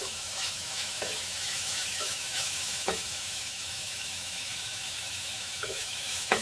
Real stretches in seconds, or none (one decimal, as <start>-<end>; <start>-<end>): none